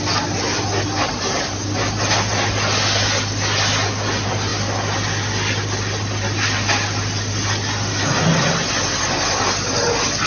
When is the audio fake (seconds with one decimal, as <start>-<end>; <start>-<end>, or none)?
none